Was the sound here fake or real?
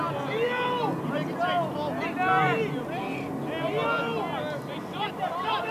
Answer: real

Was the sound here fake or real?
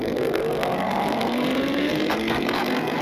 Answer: fake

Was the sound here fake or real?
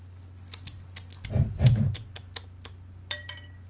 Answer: real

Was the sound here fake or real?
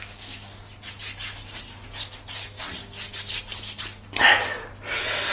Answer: real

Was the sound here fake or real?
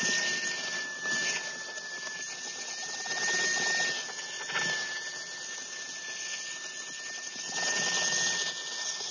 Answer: real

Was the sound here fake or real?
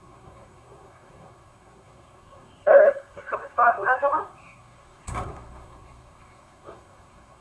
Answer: fake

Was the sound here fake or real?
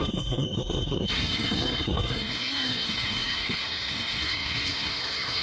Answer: fake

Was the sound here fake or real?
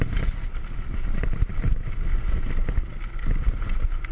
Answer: real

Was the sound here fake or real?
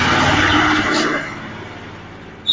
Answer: real